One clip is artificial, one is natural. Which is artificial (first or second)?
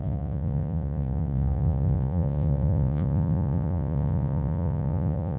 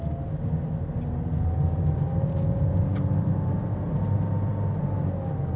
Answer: first